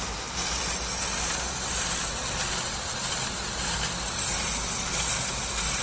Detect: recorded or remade recorded